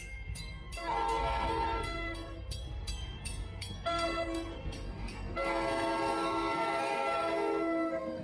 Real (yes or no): no